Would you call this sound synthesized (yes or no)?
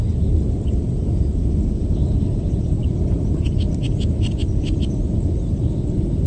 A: no